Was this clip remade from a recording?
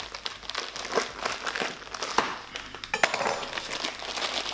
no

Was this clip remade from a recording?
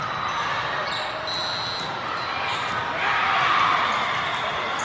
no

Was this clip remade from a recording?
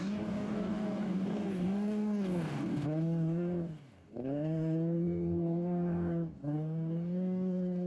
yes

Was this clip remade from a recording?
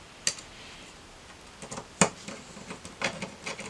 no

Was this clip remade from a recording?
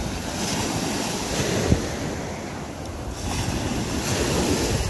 no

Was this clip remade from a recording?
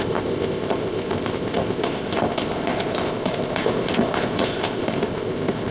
yes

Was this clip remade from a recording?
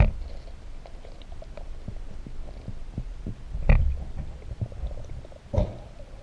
no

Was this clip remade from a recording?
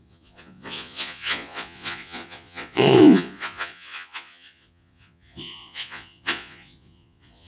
yes